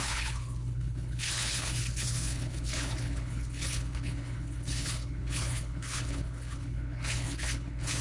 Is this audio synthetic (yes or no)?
yes